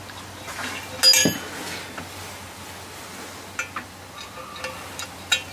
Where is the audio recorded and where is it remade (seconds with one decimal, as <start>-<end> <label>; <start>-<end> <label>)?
0.0-5.5 recorded